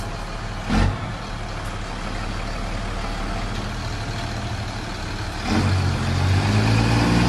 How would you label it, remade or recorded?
recorded